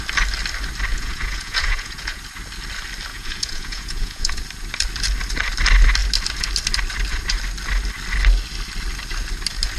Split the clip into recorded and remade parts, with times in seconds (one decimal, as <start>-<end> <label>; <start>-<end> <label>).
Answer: 0.0-0.9 recorded; 0.9-2.2 remade; 2.2-3.1 recorded; 3.1-4.4 remade; 4.4-9.8 recorded